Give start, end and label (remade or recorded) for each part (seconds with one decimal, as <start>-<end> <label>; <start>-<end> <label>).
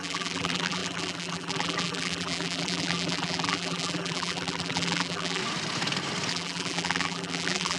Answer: 0.0-5.4 remade; 5.4-6.3 recorded; 6.3-7.8 remade